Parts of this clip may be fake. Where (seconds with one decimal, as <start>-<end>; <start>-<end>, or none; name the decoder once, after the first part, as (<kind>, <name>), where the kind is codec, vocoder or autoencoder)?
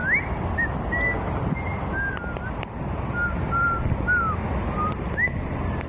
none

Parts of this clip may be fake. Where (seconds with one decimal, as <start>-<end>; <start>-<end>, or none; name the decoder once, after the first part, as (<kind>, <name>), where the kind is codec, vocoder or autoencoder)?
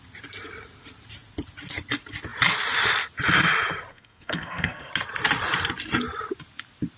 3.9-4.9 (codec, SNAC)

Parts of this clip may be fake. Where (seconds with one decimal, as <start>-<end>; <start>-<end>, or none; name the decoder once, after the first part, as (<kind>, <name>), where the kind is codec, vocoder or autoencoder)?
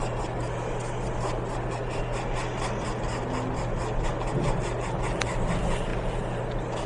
none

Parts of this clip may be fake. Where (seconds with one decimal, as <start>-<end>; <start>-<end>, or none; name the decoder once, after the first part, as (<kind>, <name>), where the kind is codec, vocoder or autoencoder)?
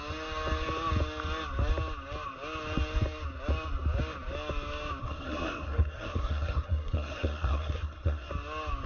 5.0-8.3 (codec, SNAC)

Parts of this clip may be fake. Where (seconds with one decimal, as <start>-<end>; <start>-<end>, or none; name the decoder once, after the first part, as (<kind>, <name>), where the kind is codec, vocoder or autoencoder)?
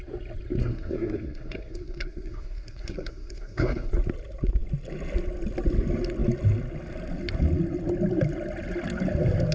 0.6-3.9 (codec, SNAC)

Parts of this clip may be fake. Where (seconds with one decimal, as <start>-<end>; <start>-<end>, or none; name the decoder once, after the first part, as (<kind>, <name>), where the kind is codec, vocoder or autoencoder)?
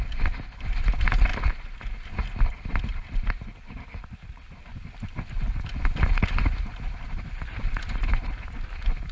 none